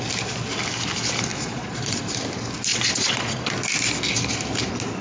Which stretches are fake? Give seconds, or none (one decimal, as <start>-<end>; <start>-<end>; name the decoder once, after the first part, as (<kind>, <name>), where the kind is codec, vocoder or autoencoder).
1.3-2.0 (vocoder, Vocos); 2.7-3.5